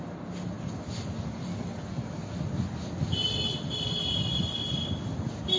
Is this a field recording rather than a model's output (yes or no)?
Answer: yes